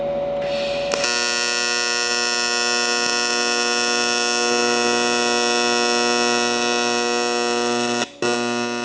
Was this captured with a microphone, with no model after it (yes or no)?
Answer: yes